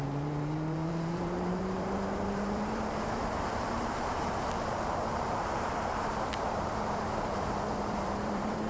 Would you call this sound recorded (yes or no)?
no